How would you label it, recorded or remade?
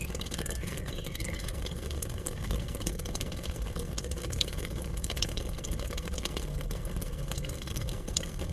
remade